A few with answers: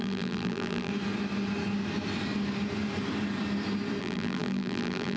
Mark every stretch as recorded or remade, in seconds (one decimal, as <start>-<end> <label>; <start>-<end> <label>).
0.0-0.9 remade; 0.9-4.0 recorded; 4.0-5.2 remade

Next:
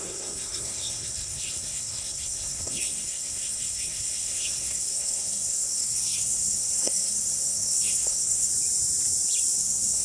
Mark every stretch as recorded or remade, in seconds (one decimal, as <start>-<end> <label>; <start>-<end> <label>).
0.0-8.5 remade; 8.5-9.6 recorded; 9.6-10.0 remade

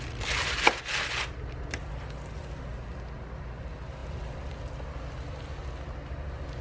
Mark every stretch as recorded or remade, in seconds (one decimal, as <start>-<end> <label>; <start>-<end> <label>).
0.0-6.6 recorded